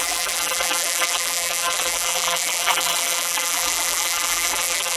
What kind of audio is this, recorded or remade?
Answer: remade